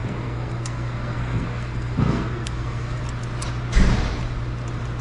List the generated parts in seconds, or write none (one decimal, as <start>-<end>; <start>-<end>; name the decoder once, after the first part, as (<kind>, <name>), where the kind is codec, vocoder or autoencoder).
0.0-3.0 (codec, SNAC)